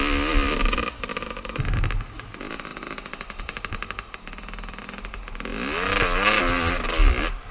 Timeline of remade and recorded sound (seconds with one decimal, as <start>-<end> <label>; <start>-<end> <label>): 0.0-2.7 recorded; 2.7-4.8 remade; 4.8-7.5 recorded